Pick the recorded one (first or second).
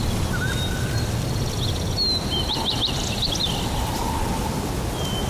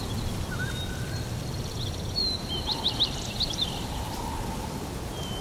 first